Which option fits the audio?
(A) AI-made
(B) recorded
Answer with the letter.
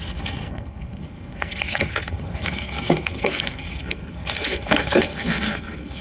A